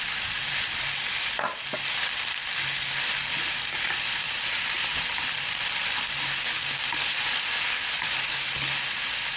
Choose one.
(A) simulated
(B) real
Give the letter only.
B